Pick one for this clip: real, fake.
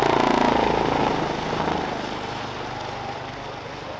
real